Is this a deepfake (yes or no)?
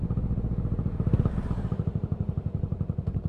no